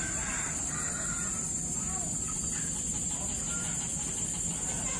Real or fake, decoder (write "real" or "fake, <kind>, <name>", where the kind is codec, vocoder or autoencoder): real